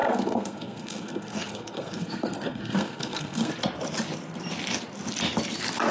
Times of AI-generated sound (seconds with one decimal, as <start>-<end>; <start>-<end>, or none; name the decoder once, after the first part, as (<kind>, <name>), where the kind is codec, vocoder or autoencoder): 0.0-3.5 (codec, SNAC)